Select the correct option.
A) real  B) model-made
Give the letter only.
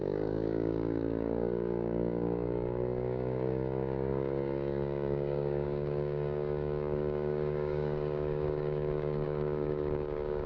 B